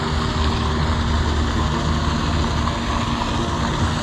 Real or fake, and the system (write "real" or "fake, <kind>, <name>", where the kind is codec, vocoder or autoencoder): real